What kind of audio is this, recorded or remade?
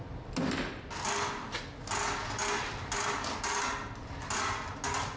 recorded